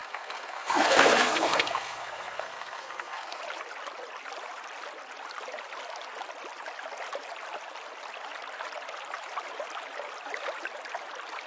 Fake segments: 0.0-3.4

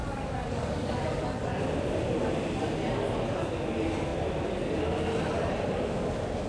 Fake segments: 0.0-1.5